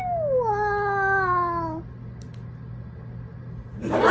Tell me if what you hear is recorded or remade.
recorded